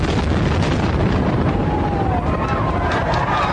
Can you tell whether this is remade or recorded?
recorded